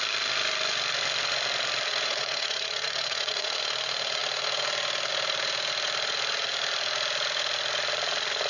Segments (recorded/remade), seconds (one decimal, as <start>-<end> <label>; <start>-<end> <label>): 0.0-1.9 recorded; 1.9-3.6 remade; 3.6-8.5 recorded